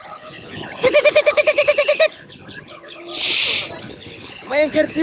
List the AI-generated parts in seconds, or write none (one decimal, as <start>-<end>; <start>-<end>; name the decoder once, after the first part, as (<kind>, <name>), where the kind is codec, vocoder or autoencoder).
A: 0.0-3.1 (codec, HILCodec); 3.8-5.0